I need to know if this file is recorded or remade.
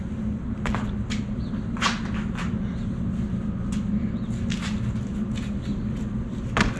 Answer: recorded